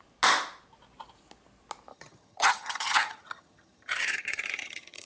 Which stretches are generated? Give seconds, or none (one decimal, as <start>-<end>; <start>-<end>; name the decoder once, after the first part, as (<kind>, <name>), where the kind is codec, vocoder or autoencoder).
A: 1.9-5.1 (vocoder, HiFi-GAN)